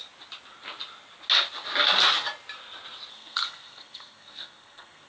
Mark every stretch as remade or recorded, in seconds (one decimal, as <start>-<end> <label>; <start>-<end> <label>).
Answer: 0.0-3.1 recorded; 3.1-5.1 remade